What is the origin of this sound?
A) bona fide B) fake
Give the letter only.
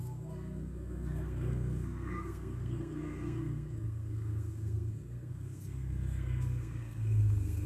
B